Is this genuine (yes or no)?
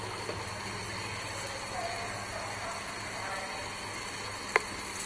yes